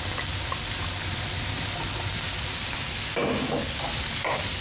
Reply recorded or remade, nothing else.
recorded